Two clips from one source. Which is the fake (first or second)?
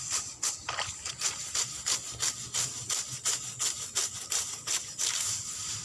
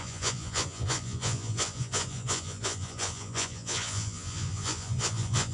second